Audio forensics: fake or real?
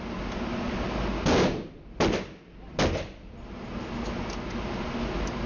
real